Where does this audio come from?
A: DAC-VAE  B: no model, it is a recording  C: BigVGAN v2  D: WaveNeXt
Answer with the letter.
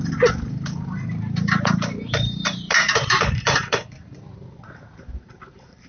C